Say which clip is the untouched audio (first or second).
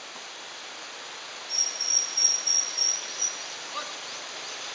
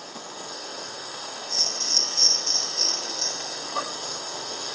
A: first